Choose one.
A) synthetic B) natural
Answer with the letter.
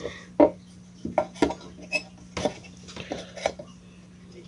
B